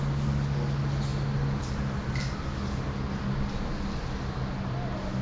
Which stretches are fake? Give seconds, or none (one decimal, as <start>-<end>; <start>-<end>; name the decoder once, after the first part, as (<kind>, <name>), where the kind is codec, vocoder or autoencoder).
none